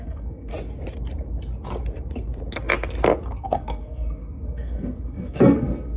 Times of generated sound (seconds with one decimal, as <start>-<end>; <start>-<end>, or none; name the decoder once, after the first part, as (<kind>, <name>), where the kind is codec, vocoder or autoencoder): 0.0-0.5 (codec, SNAC); 3.3-6.0